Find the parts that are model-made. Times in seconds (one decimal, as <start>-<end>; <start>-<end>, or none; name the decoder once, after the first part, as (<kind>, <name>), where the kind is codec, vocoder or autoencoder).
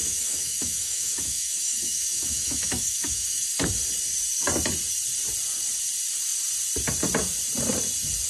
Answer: 0.0-3.5 (autoencoder, DAC-VAE)